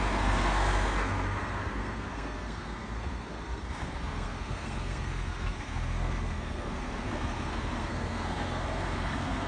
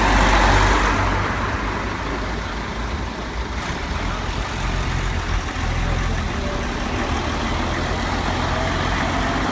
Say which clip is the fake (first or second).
first